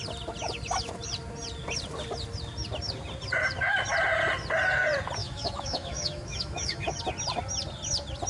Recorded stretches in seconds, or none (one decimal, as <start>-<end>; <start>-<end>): 0.0-5.2; 7.0-8.3